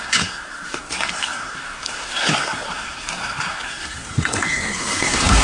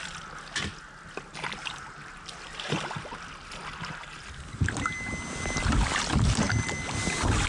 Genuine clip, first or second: second